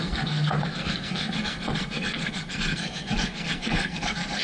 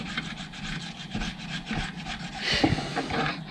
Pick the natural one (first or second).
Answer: second